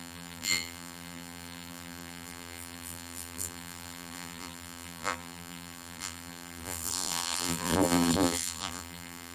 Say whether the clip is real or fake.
fake